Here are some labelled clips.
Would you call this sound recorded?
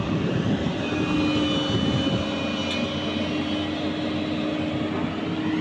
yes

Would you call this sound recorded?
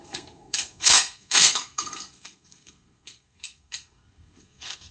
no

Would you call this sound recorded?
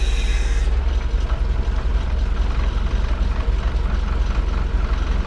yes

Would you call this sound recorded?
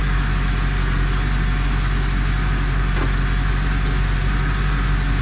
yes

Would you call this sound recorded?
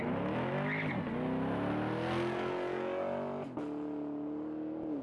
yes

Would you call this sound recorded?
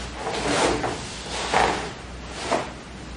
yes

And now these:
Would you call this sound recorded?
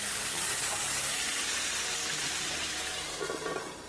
yes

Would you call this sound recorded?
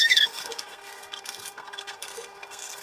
no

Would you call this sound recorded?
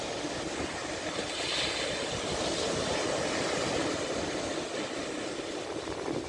yes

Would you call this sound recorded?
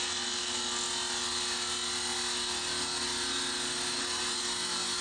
yes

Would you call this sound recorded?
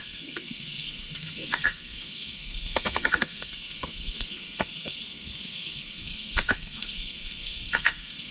no